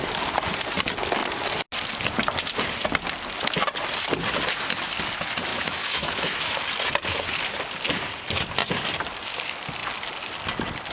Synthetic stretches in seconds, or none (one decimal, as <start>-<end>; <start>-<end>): 5.5-6.6